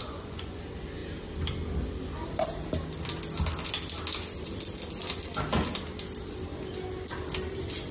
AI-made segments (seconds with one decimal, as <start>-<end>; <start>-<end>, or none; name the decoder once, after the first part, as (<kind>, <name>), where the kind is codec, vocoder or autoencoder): 0.0-0.6 (vocoder, Vocos)